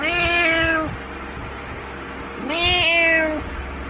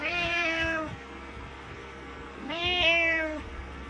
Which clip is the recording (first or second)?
first